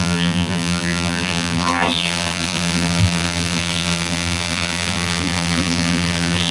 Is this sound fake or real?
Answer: fake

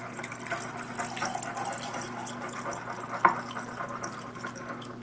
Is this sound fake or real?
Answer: real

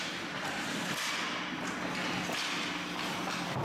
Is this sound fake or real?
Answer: real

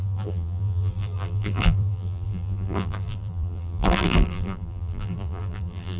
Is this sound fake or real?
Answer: fake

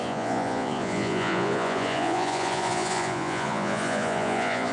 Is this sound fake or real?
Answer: fake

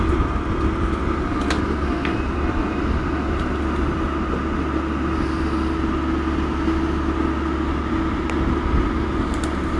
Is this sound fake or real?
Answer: real